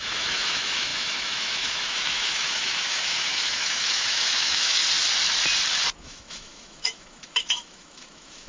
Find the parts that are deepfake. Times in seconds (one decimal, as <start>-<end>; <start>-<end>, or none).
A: 0.0-4.8; 6.0-8.5